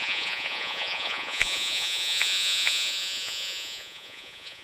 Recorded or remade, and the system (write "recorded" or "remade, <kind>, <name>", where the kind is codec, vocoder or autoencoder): remade, vocoder, Vocos